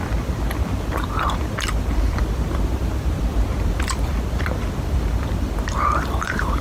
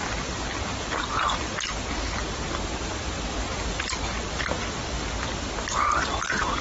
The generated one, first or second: first